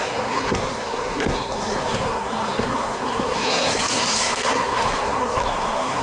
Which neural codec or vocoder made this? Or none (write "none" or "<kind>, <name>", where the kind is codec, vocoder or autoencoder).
codec, SNAC